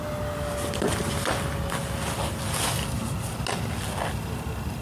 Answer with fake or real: real